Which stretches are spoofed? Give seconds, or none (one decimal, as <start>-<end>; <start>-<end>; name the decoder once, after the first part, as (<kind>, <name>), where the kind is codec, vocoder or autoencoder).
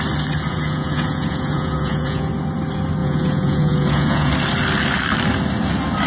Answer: 0.5-2.3 (vocoder, Vocos); 3.0-4.3